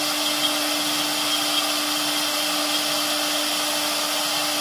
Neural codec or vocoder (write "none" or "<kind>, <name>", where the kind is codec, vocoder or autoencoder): none